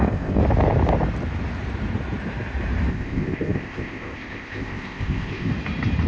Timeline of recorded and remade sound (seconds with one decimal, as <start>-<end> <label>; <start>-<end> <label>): 0.0-0.4 remade; 0.4-2.9 recorded; 2.9-5.5 remade; 5.5-6.1 recorded